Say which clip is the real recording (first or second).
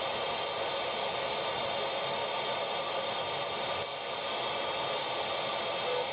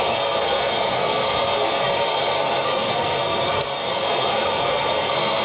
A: first